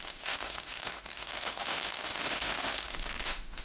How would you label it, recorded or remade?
remade